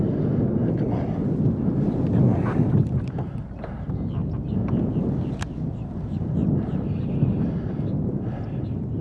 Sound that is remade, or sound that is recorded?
recorded